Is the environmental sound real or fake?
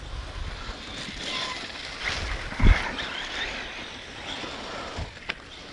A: real